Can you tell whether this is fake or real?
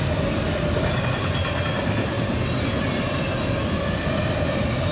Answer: real